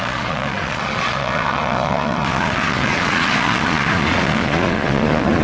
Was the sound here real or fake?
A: fake